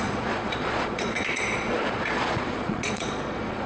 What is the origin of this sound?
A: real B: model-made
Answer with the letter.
B